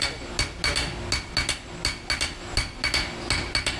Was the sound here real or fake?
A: real